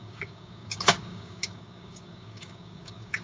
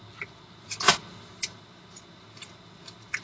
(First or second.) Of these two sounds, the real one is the second